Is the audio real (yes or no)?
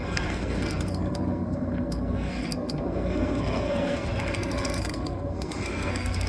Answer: no